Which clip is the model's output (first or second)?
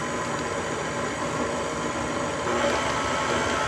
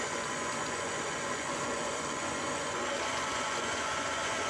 second